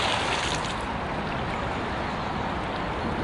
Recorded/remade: recorded